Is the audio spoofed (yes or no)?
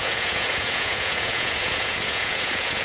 yes